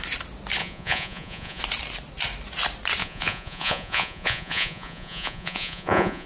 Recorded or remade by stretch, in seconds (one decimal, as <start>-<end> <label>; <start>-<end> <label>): 0.0-0.6 recorded; 0.6-1.6 remade; 1.6-3.0 recorded; 3.0-6.3 remade